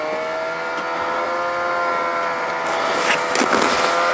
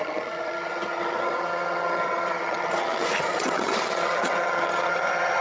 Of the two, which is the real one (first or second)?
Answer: first